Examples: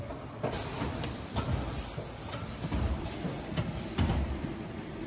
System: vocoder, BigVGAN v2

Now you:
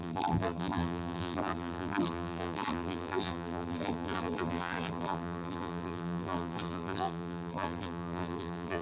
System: vocoder, BigVGAN v2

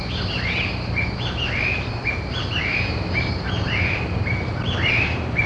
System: none